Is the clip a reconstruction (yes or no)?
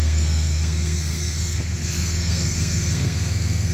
yes